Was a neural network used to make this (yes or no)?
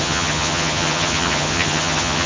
yes